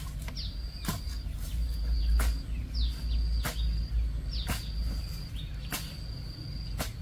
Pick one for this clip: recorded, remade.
recorded